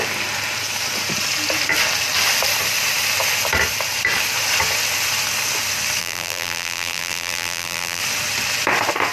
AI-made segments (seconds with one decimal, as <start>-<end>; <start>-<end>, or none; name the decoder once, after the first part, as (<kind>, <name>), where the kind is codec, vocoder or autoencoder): 6.0-8.0 (vocoder, BigVGAN v2)

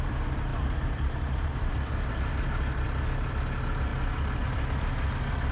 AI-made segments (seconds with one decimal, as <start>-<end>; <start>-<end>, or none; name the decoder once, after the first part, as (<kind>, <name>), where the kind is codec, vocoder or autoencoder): 0.5-1.7 (vocoder, BigVGAN v2)

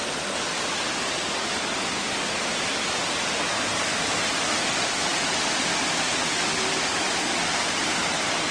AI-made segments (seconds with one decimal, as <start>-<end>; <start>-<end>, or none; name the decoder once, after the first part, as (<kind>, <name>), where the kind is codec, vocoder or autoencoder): none